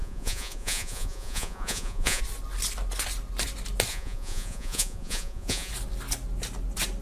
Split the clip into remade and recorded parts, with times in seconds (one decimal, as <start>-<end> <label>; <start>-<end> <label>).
0.0-2.2 remade; 2.2-3.9 recorded; 3.9-5.7 remade; 5.7-7.0 recorded